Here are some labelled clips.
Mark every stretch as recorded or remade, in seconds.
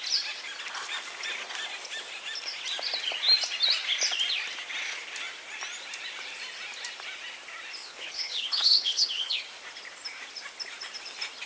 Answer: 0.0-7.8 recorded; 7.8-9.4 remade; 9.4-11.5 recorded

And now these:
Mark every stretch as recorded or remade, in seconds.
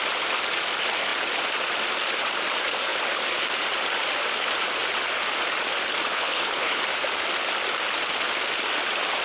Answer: 0.0-6.1 recorded; 6.1-6.8 remade; 6.8-9.2 recorded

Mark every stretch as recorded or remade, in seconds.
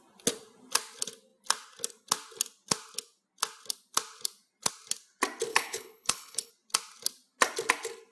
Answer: 0.0-5.5 recorded; 5.5-6.5 remade; 6.5-8.1 recorded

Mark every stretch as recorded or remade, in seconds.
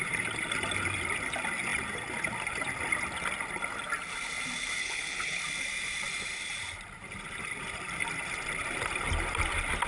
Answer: 0.0-4.8 recorded; 4.8-5.4 remade; 5.4-9.9 recorded